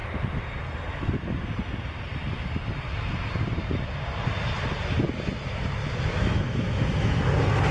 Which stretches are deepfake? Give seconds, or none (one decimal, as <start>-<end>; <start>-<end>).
5.8-7.2